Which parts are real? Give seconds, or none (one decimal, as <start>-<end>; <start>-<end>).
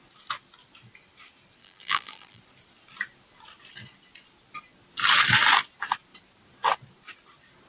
0.0-1.6; 2.4-7.7